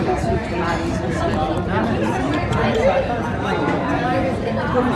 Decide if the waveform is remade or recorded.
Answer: recorded